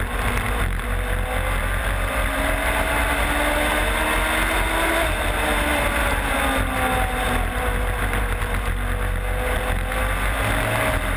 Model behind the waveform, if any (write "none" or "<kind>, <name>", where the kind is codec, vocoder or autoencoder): none